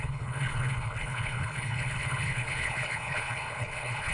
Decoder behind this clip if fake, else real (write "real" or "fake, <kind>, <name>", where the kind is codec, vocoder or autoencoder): fake, codec, HILCodec